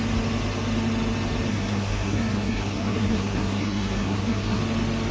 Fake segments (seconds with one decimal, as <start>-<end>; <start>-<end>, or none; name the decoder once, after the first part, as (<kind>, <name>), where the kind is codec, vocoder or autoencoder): 1.5-4.6 (codec, SNAC)